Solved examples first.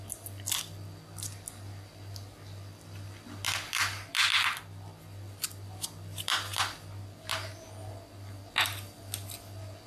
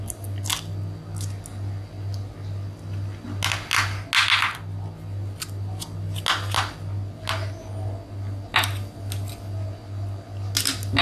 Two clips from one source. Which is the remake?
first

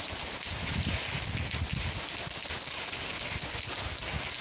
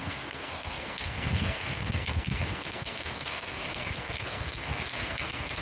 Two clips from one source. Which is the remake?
second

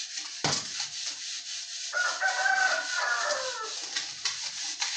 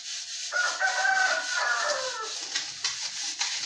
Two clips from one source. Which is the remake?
first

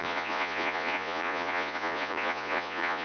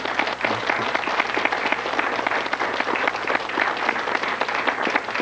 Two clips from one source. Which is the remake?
first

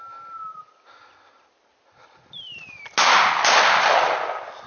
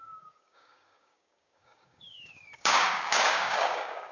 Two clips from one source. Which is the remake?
second